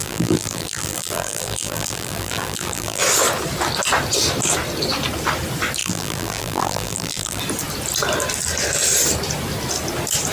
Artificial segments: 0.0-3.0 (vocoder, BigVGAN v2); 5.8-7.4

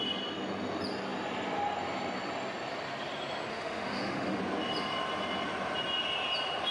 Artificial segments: 3.5-4.4 (autoencoder, DAC-VAE)

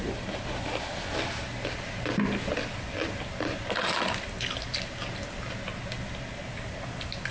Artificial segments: none

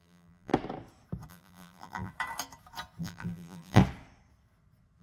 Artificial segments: 0.0-0.5 (vocoder, BigVGAN v2); 1.3-2.1; 3.0-3.8